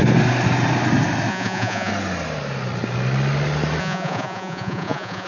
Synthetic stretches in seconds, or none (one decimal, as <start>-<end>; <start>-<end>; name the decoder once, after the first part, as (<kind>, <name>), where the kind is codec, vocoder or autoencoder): 1.3-1.9 (vocoder, Vocos); 3.8-5.3